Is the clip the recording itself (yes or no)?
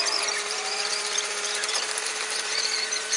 no